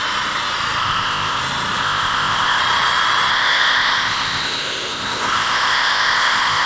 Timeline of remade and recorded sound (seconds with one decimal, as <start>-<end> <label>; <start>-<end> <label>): 0.0-0.8 recorded; 0.8-1.4 remade; 1.4-1.8 recorded; 1.8-2.6 remade; 2.6-3.3 recorded; 3.3-6.7 remade